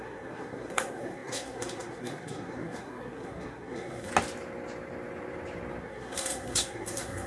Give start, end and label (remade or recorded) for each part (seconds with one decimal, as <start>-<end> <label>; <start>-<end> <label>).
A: 0.0-4.1 remade; 4.1-5.8 recorded; 5.8-7.3 remade